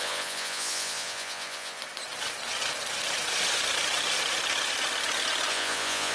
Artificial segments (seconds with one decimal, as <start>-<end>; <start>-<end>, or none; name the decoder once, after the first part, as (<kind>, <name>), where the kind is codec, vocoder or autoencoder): 0.0-1.8 (vocoder, Vocos); 5.5-6.1